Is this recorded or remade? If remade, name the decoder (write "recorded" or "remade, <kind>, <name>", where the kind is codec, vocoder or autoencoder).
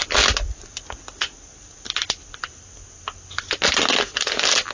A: recorded